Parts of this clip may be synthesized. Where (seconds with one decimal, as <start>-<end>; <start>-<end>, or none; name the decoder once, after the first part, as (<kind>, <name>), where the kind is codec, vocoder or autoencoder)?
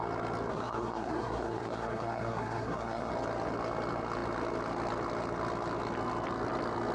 0.5-3.1 (codec, SNAC)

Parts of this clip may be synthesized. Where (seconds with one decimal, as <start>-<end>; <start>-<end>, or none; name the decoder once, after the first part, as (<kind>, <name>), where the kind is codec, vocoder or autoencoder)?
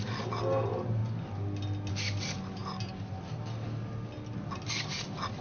none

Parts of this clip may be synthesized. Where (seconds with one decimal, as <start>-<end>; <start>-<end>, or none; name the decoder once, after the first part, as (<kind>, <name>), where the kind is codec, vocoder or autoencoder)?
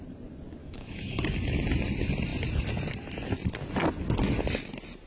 0.6-1.2 (autoencoder, DAC-VAE)